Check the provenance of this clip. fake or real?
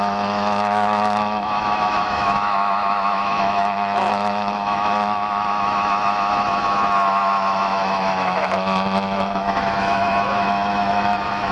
fake